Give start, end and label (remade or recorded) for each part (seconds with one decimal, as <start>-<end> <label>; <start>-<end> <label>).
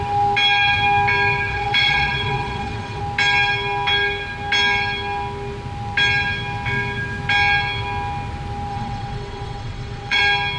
0.0-1.5 recorded; 1.5-3.0 remade; 3.0-8.7 recorded; 8.7-10.2 remade; 10.2-10.6 recorded